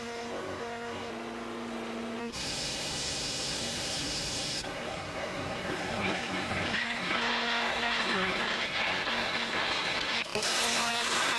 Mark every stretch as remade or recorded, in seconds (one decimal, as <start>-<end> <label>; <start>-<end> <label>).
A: 0.0-1.1 remade; 1.1-2.2 recorded; 2.2-11.4 remade